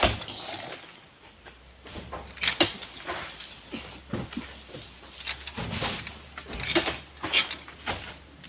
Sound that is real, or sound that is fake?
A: real